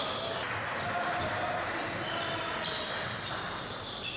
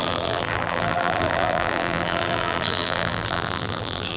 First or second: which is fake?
second